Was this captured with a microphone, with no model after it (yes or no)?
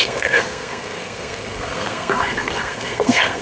no